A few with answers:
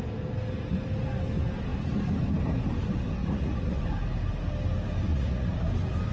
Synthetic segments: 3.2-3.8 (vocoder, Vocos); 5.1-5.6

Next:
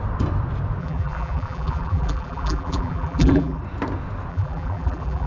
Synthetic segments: 0.8-3.6 (vocoder, BigVGAN v2); 4.3-5.3

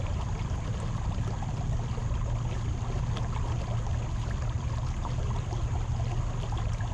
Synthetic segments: none

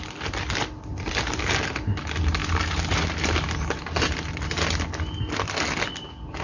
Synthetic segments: 2.4-4.3 (vocoder, BigVGAN v2)

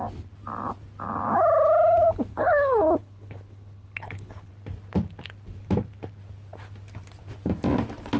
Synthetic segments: 2.3-4.5 (codec, HILCodec)

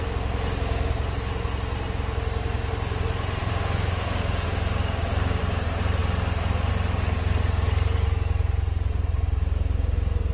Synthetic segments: 3.4-5.4 (codec, DAC)

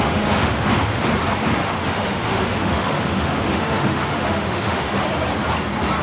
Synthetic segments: 0.0-1.1 (autoencoder, DAC-VAE); 1.6-4.9

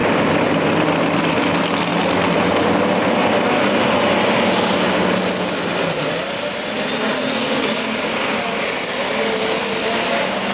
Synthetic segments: 7.4-8.4 (codec, DAC)